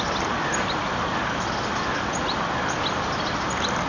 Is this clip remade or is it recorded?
recorded